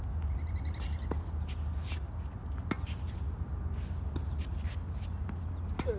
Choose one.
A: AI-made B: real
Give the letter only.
B